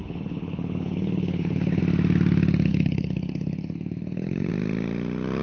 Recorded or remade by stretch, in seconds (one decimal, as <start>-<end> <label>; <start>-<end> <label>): 0.0-1.8 remade; 1.8-2.7 recorded; 2.7-4.5 remade; 4.5-5.4 recorded